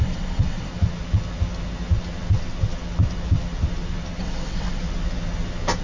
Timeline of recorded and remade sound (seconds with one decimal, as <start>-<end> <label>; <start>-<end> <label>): 0.0-0.7 remade; 0.7-4.2 recorded; 4.2-4.8 remade; 4.8-5.8 recorded